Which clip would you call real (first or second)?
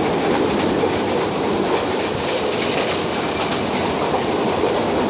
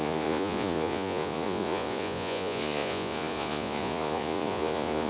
first